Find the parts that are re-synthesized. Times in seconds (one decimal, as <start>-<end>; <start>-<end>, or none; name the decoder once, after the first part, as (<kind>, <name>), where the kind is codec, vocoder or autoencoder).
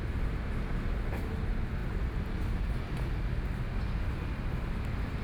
none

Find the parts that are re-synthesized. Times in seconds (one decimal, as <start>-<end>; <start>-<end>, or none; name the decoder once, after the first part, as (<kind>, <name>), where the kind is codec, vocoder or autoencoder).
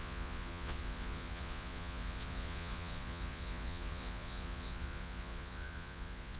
0.0-6.4 (vocoder, Vocos)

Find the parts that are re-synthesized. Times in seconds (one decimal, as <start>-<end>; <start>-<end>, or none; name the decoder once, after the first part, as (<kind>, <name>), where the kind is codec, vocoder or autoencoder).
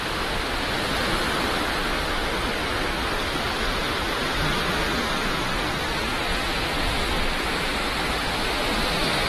6.3-7.1 (vocoder, Vocos)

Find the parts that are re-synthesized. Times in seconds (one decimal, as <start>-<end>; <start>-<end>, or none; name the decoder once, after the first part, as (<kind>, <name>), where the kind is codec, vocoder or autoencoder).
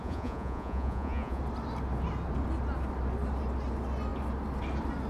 0.0-1.4 (vocoder, Vocos)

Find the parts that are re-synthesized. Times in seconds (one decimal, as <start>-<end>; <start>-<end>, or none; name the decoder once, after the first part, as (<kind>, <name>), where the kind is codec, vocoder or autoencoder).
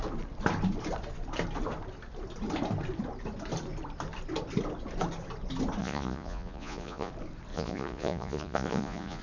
5.8-7.1 (vocoder, Vocos); 7.5-9.2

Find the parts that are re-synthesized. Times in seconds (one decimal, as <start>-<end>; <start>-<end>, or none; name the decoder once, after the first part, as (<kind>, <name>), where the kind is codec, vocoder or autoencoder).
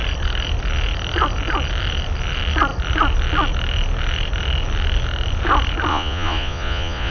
5.9-7.1 (vocoder, Vocos)